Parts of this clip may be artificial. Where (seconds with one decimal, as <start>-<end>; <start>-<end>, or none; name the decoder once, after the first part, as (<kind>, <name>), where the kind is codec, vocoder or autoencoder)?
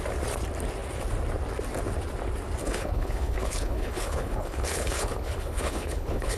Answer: 2.6-6.4 (codec, HILCodec)